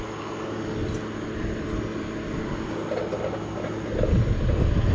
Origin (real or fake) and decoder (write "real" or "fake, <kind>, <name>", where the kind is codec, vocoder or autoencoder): real